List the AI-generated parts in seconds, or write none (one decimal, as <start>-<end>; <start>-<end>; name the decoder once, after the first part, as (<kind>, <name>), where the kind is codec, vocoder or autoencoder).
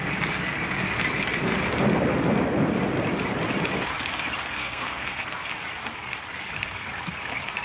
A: 4.6-5.5 (codec, SNAC)